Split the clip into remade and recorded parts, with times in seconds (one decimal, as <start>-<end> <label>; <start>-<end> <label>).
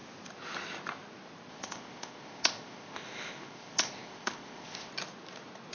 0.0-1.5 recorded; 1.5-4.9 remade; 4.9-5.7 recorded